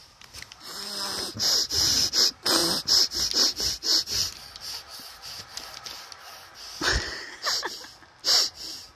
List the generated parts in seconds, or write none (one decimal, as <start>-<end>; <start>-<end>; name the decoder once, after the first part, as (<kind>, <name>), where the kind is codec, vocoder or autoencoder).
none